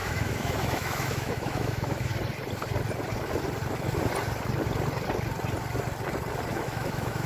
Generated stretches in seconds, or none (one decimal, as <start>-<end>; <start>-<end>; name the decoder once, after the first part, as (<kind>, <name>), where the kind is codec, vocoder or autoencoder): 0.0-2.1 (autoencoder, DAC-VAE); 6.5-7.3